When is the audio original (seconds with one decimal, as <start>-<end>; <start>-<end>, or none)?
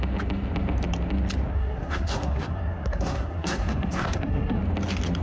0.0-1.5; 4.6-5.2